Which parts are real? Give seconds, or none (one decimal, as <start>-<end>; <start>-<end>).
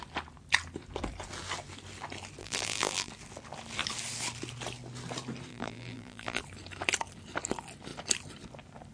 0.0-2.4; 3.1-5.5; 6.4-8.9